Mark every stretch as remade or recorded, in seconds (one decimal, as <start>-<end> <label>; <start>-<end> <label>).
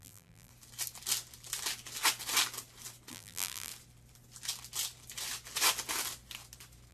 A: 0.0-0.5 remade; 0.5-3.1 recorded; 3.1-3.7 remade; 3.7-6.9 recorded